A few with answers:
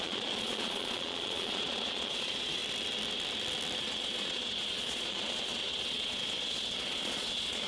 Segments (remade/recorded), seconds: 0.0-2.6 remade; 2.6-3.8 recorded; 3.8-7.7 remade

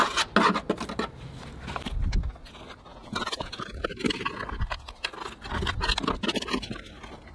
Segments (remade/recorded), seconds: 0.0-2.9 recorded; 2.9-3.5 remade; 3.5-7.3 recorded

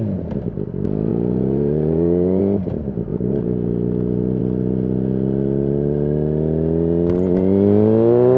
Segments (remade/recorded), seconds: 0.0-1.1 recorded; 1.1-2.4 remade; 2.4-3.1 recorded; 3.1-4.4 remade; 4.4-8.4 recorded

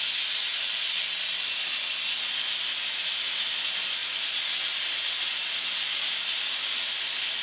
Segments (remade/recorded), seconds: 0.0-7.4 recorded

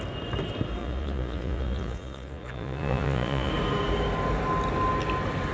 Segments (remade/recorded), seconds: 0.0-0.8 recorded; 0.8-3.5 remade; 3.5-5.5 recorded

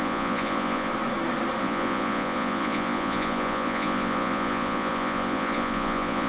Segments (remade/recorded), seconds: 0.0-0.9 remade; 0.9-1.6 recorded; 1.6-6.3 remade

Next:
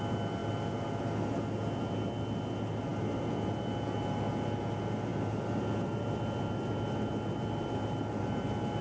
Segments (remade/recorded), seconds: 0.0-8.8 recorded